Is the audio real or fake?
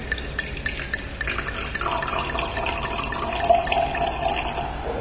real